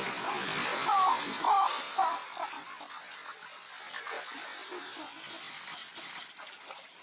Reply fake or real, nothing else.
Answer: real